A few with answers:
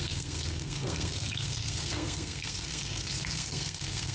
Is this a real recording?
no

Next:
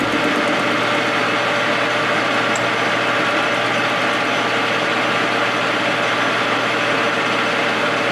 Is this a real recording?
yes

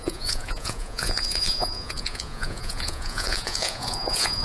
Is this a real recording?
no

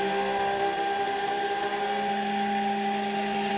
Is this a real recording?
yes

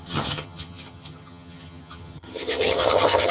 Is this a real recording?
no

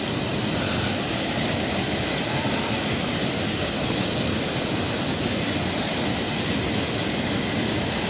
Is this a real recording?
yes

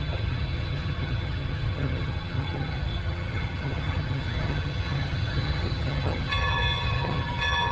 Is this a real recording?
no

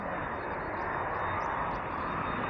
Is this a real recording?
yes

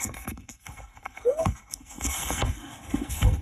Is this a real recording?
no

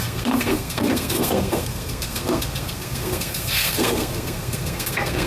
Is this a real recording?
no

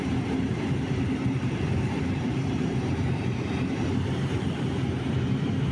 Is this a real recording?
no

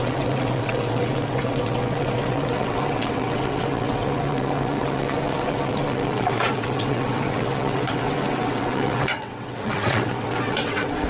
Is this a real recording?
no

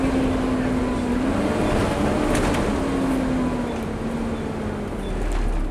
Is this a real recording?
yes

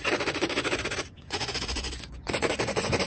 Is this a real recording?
no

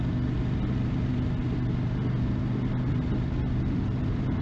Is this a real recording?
yes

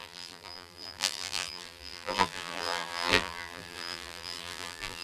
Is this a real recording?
no